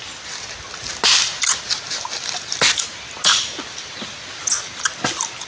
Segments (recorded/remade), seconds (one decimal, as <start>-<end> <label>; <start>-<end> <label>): 0.0-5.5 recorded